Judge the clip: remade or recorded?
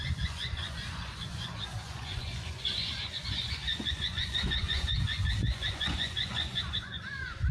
remade